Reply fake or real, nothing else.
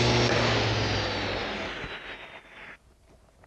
real